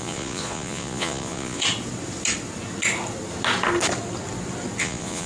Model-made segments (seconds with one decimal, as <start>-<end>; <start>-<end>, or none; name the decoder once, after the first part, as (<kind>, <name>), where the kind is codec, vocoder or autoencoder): 0.0-1.6 (vocoder, Vocos); 4.8-5.3